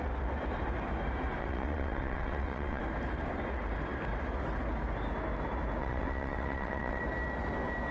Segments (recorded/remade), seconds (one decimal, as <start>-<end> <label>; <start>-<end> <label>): 0.0-1.4 recorded; 1.4-2.8 remade; 2.8-5.8 recorded; 5.8-7.0 remade; 7.0-7.9 recorded